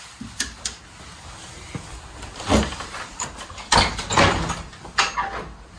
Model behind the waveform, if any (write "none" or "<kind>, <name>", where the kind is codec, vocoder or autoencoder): none